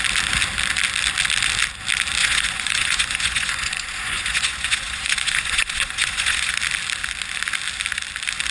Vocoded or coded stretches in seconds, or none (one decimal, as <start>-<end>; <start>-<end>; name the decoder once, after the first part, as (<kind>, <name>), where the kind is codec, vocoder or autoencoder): 2.2-6.5 (vocoder, Vocos)